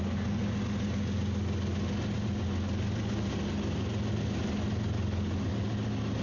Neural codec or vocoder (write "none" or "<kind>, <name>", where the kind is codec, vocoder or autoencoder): none